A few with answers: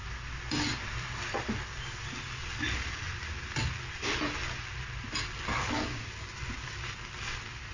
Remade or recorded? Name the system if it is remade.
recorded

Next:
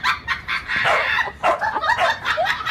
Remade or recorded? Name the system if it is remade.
remade, vocoder, BigVGAN v2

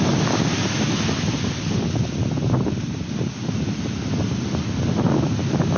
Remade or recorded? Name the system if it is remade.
recorded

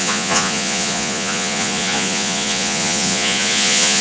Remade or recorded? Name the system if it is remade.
remade, vocoder, Vocos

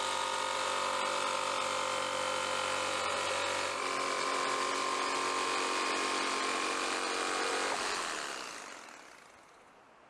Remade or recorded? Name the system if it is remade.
recorded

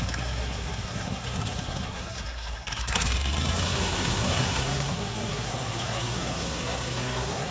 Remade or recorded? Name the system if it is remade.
remade, codec, SNAC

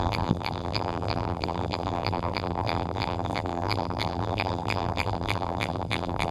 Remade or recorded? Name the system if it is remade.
remade, vocoder, BigVGAN v2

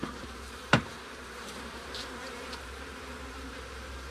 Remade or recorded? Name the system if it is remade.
remade, vocoder, BigVGAN v2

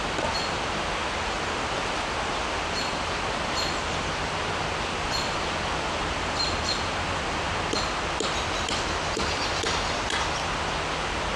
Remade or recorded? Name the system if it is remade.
recorded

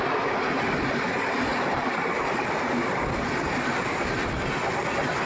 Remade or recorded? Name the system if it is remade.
recorded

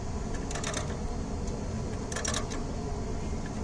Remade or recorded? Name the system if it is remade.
recorded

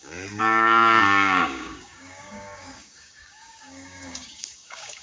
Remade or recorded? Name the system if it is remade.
remade, codec, DAC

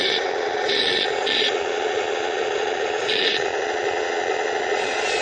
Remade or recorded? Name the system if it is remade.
remade, vocoder, Vocos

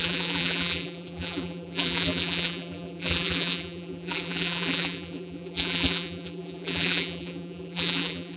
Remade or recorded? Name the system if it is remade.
remade, vocoder, BigVGAN v2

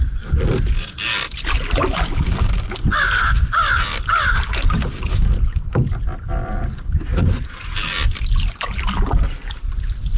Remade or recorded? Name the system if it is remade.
recorded